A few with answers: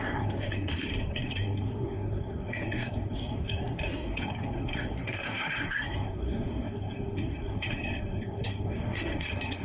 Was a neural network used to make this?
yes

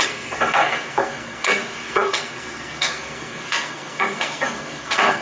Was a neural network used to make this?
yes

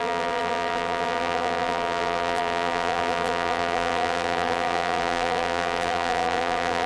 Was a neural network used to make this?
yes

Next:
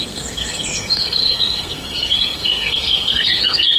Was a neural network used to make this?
yes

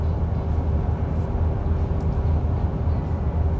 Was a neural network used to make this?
no